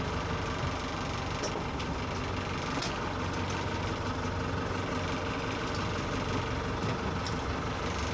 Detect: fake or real real